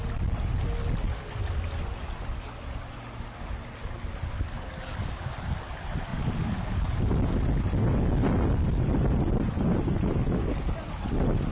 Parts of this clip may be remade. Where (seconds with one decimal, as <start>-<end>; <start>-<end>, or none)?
none